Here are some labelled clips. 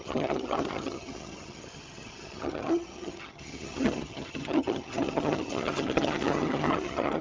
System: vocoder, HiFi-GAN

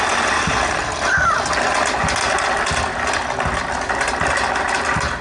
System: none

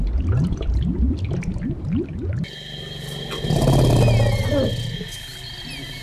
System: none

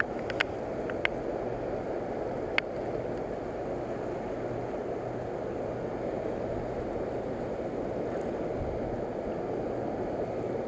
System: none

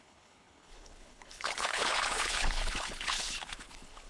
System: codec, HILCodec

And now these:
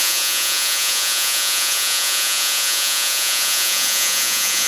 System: vocoder, Vocos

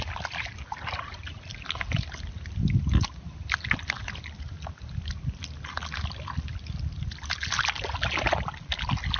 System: none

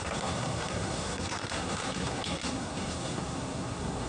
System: codec, SNAC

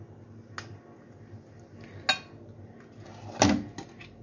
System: none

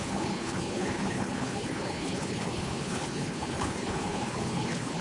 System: codec, HILCodec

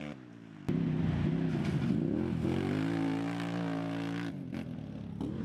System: none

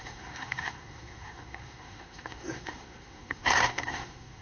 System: codec, SNAC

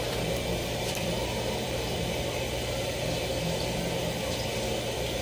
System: vocoder, BigVGAN v2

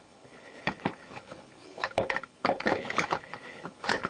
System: codec, HILCodec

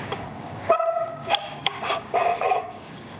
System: codec, DAC